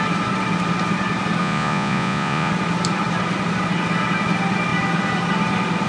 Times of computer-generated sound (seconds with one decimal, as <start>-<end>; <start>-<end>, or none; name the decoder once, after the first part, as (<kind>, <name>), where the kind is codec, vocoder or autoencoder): 1.4-2.5 (vocoder, Vocos)